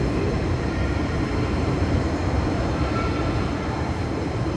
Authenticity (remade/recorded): remade